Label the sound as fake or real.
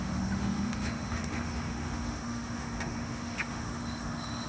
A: fake